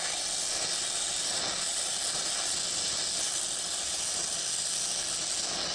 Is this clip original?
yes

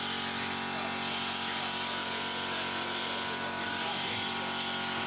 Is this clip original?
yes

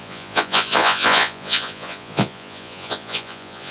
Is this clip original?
no